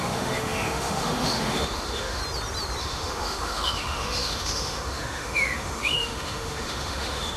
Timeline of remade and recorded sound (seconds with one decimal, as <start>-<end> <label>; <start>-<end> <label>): 0.0-2.2 remade; 2.2-2.8 recorded; 2.8-7.4 remade